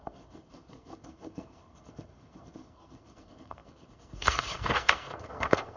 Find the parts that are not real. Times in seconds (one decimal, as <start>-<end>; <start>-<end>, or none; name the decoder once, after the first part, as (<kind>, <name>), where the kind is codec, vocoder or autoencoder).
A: 0.0-5.8 (codec, SNAC)